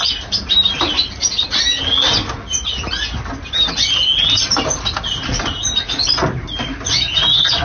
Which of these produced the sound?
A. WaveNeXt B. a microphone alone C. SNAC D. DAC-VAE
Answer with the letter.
B